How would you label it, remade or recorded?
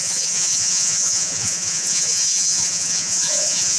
remade